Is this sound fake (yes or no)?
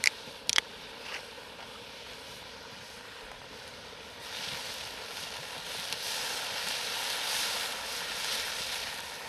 yes